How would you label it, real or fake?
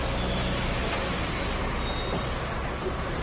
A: real